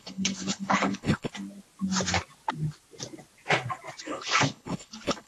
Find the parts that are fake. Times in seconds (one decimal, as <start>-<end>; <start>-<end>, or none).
0.0-1.3; 4.0-5.3